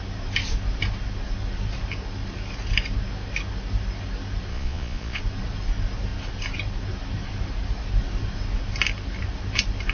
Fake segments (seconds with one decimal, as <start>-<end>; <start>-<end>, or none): 4.5-5.2